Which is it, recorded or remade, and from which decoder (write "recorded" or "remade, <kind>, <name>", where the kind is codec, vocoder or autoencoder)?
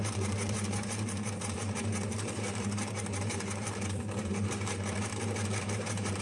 remade, vocoder, BigVGAN v2